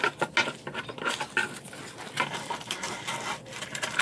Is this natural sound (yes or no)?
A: yes